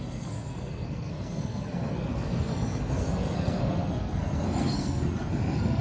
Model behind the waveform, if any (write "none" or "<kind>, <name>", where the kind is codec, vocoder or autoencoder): codec, SNAC